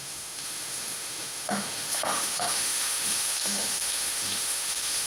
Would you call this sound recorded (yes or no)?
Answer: no